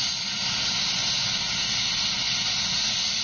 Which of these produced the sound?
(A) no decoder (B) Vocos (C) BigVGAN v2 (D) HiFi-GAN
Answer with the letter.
A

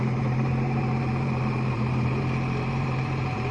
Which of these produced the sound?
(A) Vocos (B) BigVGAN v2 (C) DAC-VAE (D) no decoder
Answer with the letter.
B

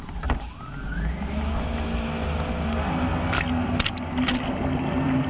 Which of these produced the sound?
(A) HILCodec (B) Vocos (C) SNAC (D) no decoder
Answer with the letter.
D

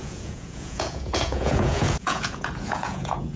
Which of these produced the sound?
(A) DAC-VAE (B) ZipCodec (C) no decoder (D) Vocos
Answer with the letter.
D